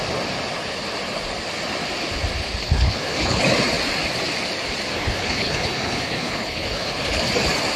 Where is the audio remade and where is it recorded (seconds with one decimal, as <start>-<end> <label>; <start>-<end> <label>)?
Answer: 0.0-2.6 recorded; 2.6-3.4 remade; 3.4-4.9 recorded; 4.9-7.2 remade; 7.2-7.8 recorded